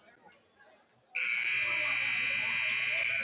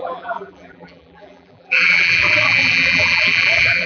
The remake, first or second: second